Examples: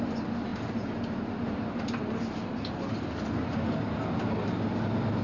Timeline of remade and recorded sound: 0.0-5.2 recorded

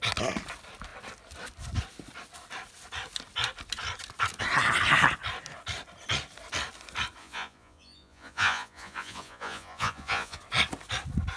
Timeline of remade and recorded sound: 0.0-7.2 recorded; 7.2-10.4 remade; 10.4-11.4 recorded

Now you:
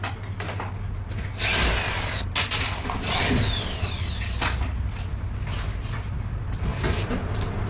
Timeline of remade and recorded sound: 0.0-7.7 recorded

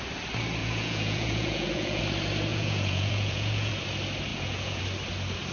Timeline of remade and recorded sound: 0.0-0.6 recorded; 0.6-2.0 remade; 2.0-2.5 recorded; 2.5-3.7 remade; 3.7-4.3 recorded; 4.3-4.8 remade; 4.8-5.5 recorded

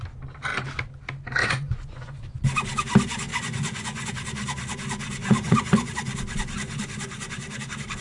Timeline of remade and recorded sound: 0.0-1.4 recorded; 1.4-2.2 remade; 2.2-3.3 recorded; 3.3-4.1 remade; 4.1-5.2 recorded; 5.2-5.9 remade; 5.9-8.0 recorded

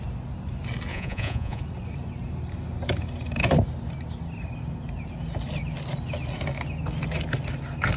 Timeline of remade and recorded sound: 0.0-0.9 recorded; 0.9-1.6 remade; 1.6-8.0 recorded